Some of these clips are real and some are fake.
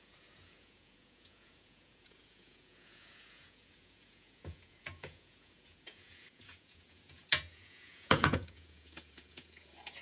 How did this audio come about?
fake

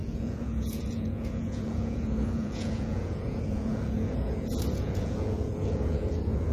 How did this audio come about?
fake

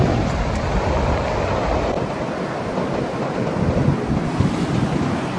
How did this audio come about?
real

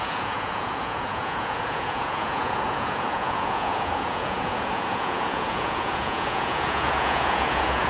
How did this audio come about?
fake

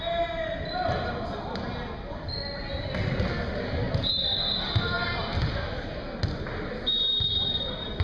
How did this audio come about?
real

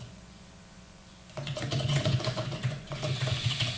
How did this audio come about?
fake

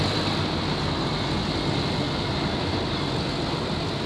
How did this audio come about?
real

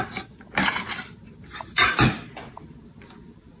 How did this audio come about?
real